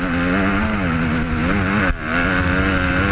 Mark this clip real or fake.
real